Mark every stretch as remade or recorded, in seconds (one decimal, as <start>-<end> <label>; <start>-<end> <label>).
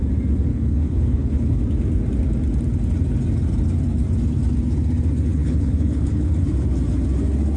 0.0-0.5 recorded; 0.5-1.6 remade; 1.6-5.3 recorded; 5.3-6.3 remade; 6.3-7.6 recorded